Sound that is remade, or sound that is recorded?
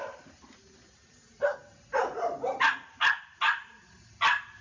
recorded